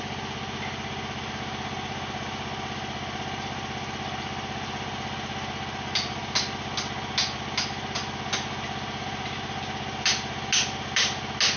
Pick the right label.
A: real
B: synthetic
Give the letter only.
A